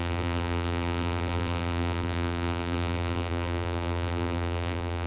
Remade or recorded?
remade